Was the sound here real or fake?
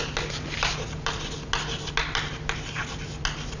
real